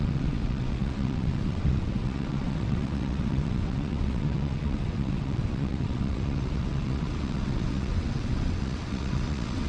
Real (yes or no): no